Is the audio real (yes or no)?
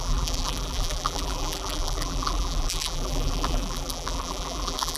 no